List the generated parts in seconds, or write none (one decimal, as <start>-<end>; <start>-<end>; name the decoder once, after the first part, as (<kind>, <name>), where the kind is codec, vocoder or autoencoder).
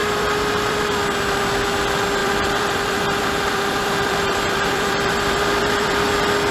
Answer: 0.0-0.9 (vocoder, BigVGAN v2); 2.2-6.1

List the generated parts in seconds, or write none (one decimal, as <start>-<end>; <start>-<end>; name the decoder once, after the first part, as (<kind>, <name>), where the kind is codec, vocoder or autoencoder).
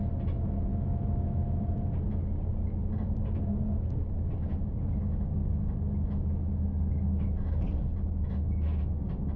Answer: 0.7-1.9 (autoencoder, DAC-VAE); 5.4-6.5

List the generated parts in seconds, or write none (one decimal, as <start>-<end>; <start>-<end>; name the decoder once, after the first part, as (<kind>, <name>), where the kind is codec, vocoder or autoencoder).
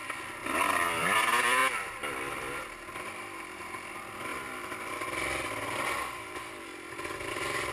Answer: 0.0-4.3 (vocoder, BigVGAN v2); 4.9-7.7